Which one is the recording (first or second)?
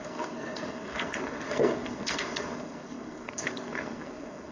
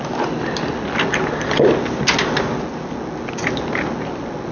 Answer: second